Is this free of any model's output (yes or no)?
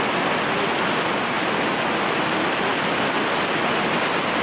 yes